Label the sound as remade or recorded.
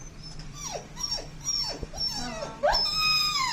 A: recorded